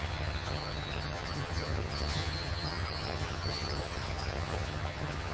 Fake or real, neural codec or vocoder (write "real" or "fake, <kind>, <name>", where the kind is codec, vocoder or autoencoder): fake, vocoder, HiFi-GAN